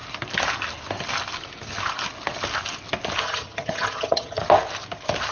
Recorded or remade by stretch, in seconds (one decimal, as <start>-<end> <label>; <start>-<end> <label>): 0.0-3.2 recorded; 3.2-4.4 remade; 4.4-5.3 recorded